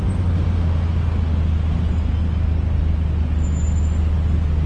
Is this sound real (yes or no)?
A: yes